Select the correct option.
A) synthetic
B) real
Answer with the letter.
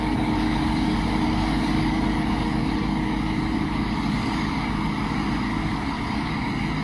A